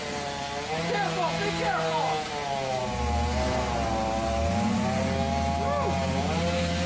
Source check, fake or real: real